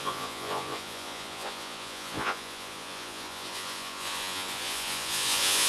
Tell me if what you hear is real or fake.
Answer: fake